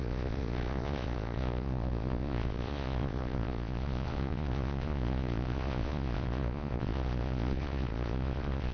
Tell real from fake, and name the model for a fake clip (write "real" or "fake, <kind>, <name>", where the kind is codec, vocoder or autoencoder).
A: fake, vocoder, Vocos